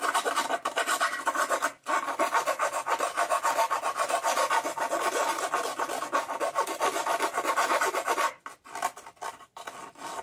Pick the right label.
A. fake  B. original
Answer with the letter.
B